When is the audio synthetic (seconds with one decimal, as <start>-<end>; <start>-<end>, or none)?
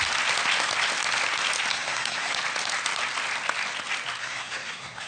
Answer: 1.7-2.3; 4.2-5.1